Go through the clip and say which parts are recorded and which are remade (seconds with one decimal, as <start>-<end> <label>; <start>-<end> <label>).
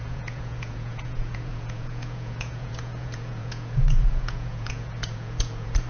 0.0-5.9 remade